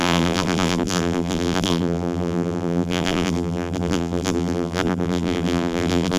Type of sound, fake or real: fake